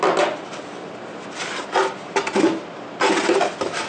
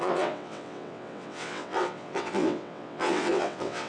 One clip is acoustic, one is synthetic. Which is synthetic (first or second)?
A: second